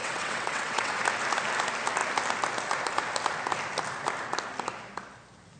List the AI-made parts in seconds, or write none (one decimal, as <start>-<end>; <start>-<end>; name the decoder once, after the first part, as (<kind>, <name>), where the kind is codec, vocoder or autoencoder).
0.0-1.0 (vocoder, WaveNeXt)